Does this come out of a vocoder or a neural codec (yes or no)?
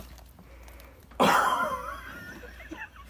no